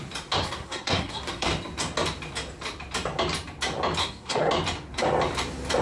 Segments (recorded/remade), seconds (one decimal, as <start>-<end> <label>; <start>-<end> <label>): 0.0-0.4 recorded; 0.4-1.5 remade; 1.5-4.0 recorded; 4.0-4.5 remade; 4.5-5.8 recorded